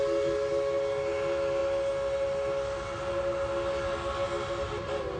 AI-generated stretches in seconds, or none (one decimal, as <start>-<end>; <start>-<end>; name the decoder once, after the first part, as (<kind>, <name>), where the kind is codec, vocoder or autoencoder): none